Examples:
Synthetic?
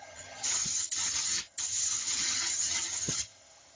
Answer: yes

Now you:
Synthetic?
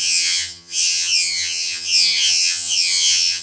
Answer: yes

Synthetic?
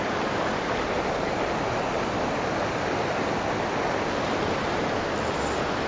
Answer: no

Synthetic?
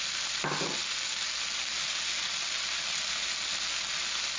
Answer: no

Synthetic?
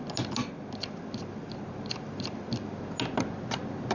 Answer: no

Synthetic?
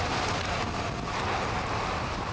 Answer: no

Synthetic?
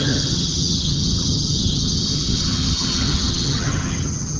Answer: yes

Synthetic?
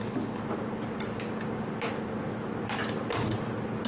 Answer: no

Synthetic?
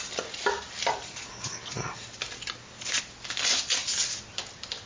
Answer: no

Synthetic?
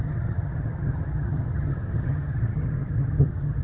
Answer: yes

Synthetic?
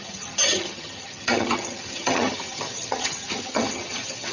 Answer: yes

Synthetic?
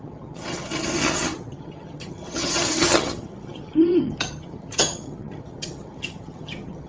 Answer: yes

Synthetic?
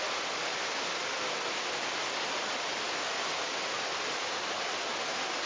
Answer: no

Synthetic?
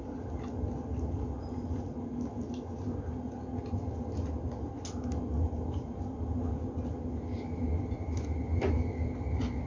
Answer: no